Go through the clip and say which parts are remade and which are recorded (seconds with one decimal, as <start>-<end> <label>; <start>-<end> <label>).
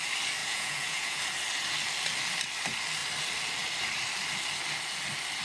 0.0-0.4 recorded; 0.4-1.2 remade; 1.2-5.4 recorded